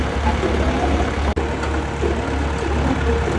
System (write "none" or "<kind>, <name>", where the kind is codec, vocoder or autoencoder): none